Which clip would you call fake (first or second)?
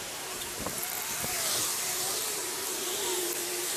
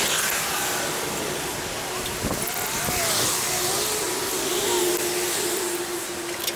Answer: first